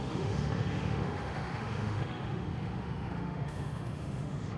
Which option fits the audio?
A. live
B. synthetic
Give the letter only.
B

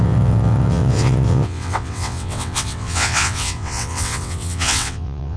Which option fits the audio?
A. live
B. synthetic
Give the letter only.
B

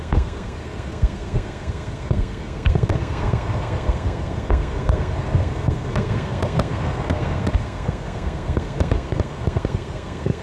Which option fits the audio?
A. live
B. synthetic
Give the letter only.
B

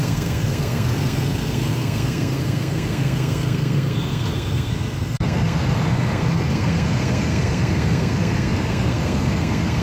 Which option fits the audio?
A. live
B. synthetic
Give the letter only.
B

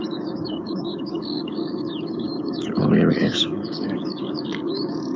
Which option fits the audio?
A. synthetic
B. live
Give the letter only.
A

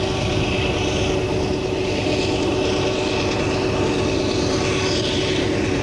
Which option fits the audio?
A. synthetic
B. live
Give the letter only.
B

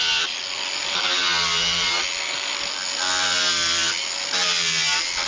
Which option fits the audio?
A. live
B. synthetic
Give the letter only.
A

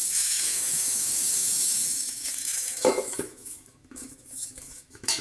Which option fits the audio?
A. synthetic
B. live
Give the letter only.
A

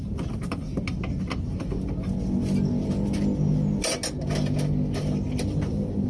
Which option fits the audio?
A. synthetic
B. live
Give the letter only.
B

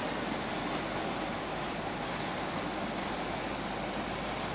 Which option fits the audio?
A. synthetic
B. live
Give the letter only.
B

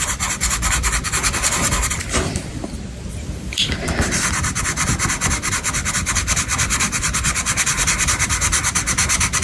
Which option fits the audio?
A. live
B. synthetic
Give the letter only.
B